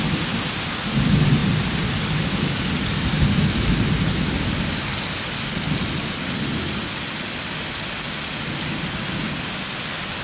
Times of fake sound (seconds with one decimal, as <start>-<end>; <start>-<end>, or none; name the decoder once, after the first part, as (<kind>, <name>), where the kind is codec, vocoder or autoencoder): none